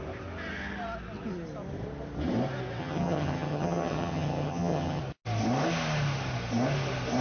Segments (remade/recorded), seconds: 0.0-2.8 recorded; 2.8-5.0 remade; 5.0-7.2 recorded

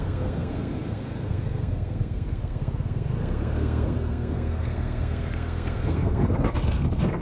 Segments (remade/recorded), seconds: 0.0-7.2 remade

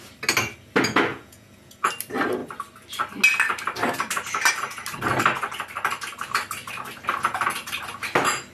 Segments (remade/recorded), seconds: 0.0-1.1 recorded; 1.1-1.9 remade; 1.9-8.5 recorded

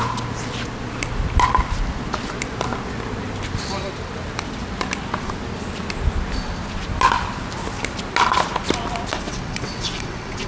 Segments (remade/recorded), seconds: 0.0-9.1 recorded; 9.1-10.5 remade

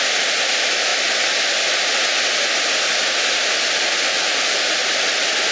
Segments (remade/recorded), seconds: 0.0-4.8 recorded; 4.8-5.5 remade